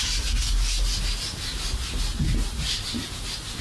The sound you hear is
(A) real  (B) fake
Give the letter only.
A